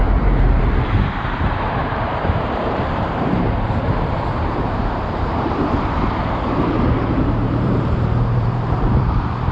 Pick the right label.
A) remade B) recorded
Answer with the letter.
A